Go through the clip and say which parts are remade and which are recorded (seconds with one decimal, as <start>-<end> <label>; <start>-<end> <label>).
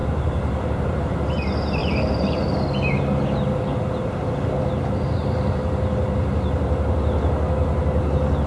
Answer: 0.0-1.0 remade; 1.0-1.8 recorded; 1.8-2.6 remade; 2.6-8.5 recorded